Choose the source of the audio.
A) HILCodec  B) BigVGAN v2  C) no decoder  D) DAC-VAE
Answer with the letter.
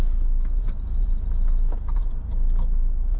C